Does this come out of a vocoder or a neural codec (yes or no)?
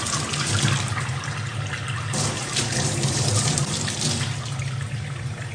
no